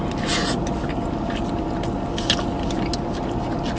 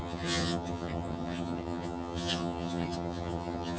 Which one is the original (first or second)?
first